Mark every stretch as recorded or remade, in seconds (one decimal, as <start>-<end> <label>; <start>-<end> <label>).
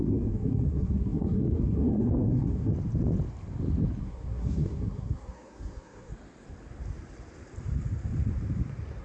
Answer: 0.0-2.7 remade; 2.7-4.0 recorded; 4.0-6.1 remade; 6.1-9.0 recorded